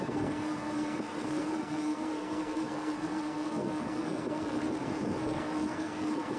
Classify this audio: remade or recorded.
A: remade